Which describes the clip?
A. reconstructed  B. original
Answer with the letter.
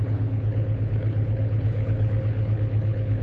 A